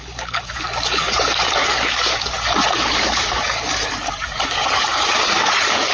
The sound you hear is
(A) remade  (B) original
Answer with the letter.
A